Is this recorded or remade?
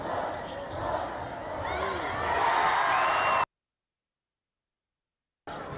recorded